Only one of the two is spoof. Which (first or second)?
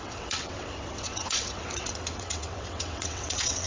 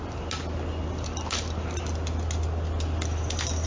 first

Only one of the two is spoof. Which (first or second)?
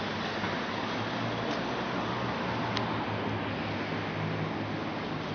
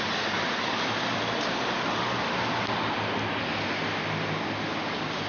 second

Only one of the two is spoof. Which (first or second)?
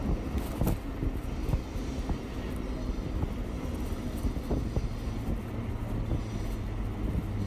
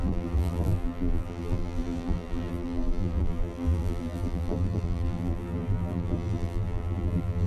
second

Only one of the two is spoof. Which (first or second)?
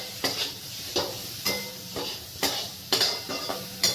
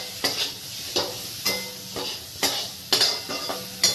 first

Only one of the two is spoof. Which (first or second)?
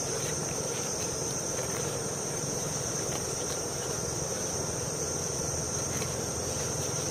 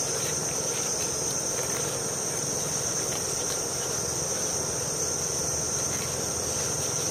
first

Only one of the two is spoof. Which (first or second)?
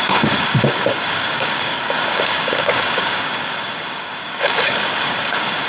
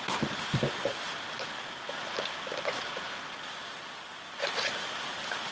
first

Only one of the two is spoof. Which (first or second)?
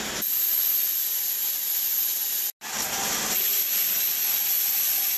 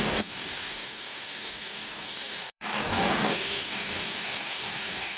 second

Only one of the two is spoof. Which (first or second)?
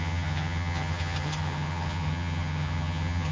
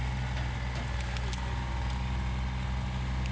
first